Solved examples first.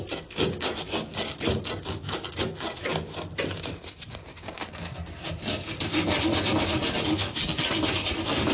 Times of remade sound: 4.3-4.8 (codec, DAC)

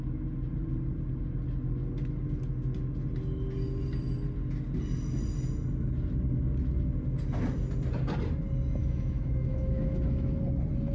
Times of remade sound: 8.8-10.4 (autoencoder, DAC-VAE)